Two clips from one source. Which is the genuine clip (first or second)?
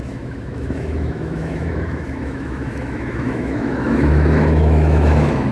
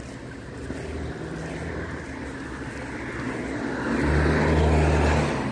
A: second